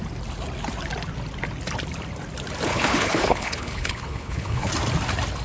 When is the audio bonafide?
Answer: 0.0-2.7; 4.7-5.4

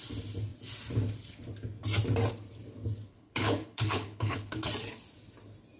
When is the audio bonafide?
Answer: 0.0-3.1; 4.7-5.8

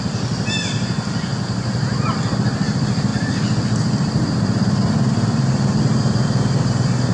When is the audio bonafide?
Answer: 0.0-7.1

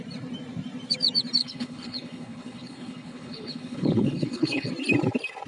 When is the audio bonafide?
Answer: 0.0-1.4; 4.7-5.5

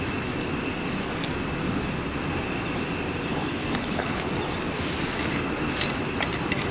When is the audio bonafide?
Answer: 0.0-3.3; 4.3-6.7

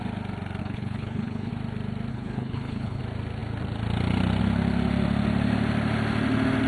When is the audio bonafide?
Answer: 0.0-0.6; 1.5-2.1; 3.0-6.7

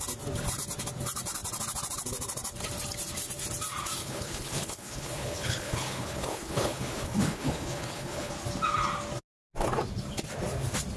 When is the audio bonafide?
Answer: 0.0-4.0; 8.3-11.0